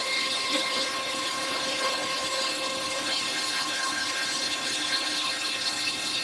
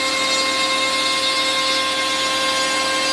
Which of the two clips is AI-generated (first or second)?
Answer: first